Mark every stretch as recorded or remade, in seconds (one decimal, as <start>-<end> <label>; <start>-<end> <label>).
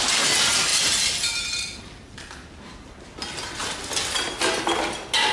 0.0-5.3 recorded